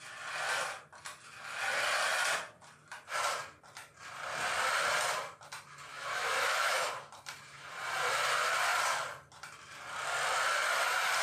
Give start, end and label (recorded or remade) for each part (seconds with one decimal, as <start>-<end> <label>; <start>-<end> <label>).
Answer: 0.0-5.9 recorded; 5.9-6.9 remade; 6.9-11.2 recorded